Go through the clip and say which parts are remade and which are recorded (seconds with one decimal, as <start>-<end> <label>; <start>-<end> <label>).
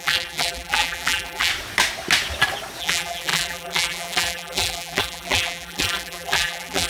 0.0-1.5 remade; 1.5-2.8 recorded; 2.8-6.9 remade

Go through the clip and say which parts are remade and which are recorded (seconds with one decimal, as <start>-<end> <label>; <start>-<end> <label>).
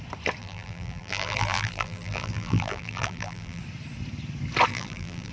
0.0-0.4 recorded; 0.4-3.6 remade; 3.6-4.7 recorded; 4.7-5.3 remade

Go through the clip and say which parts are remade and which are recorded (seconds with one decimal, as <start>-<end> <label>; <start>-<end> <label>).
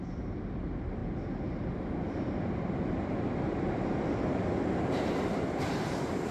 0.0-6.3 recorded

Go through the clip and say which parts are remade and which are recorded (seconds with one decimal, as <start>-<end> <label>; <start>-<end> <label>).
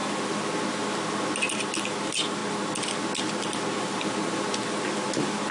0.0-5.5 recorded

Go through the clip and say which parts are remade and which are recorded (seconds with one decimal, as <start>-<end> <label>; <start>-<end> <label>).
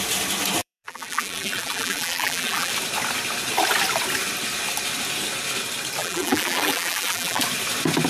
0.0-0.6 recorded; 0.6-2.7 remade; 2.7-6.0 recorded; 6.0-7.4 remade; 7.4-8.1 recorded